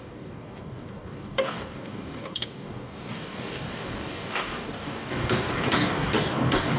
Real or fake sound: fake